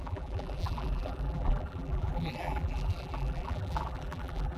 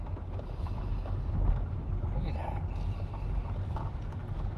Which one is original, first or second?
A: second